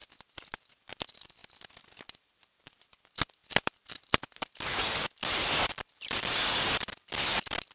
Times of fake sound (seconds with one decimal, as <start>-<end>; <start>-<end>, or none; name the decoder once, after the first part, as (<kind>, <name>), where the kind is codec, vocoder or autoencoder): 0.5-1.4 (vocoder, BigVGAN v2); 2.3-7.7